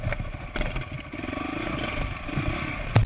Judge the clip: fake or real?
real